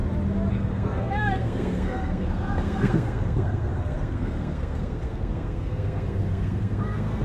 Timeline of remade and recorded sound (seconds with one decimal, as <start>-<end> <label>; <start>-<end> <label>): 0.0-0.5 recorded; 0.5-7.2 remade